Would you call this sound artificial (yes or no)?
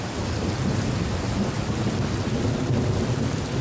no